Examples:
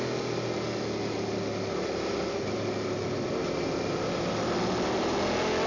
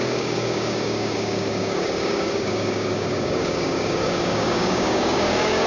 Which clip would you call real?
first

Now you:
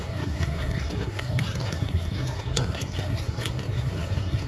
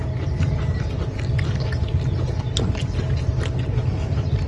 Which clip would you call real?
second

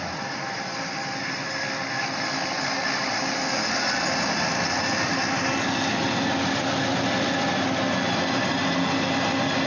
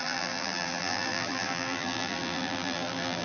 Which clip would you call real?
first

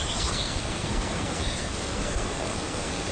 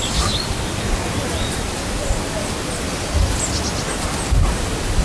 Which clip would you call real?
second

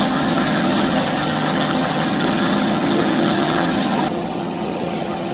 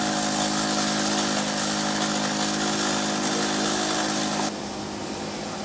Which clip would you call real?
second